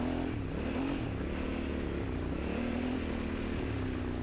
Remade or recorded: recorded